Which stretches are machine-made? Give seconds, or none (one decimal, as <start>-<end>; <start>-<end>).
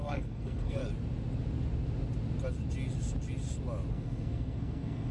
0.0-0.8; 3.9-5.1